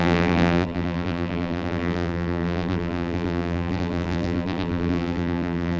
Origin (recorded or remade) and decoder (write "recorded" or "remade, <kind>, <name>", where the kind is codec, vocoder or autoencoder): remade, vocoder, BigVGAN v2